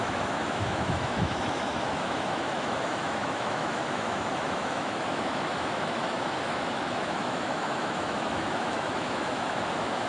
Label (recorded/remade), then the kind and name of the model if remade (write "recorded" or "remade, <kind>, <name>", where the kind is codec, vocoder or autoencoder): remade, autoencoder, DAC-VAE